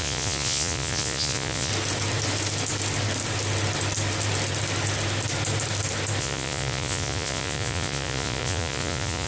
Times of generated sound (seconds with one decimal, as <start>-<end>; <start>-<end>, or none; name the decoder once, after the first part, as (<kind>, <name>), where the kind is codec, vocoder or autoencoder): 0.0-1.7 (vocoder, Vocos); 6.2-9.3